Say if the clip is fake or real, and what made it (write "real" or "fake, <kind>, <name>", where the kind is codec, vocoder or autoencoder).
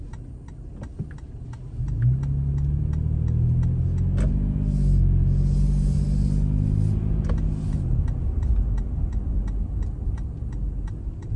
real